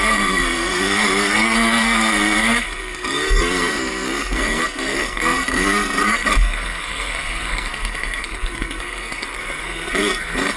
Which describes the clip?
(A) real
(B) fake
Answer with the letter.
B